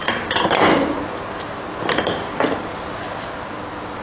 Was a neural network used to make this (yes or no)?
no